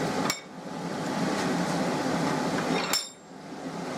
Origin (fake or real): real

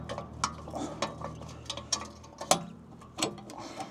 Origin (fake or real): real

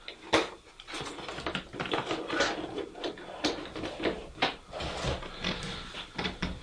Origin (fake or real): real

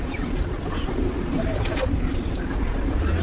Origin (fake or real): real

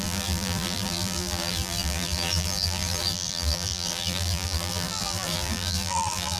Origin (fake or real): fake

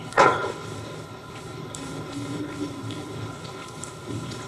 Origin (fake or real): fake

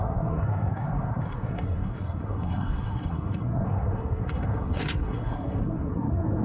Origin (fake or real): fake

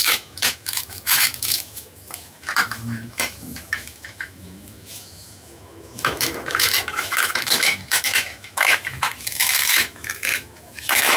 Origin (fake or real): fake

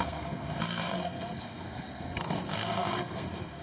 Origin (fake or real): fake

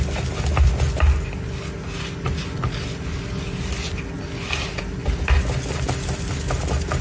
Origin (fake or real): real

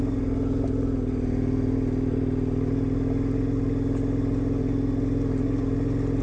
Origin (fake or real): real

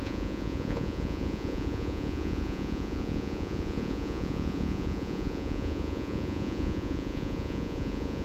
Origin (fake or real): fake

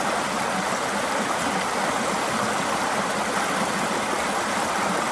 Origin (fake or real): real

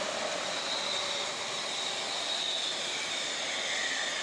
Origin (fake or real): real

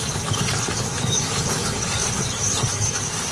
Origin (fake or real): fake